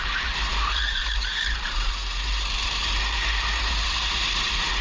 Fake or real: fake